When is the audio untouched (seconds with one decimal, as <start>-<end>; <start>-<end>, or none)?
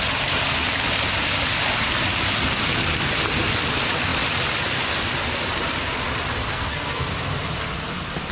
0.0-6.5; 7.1-8.3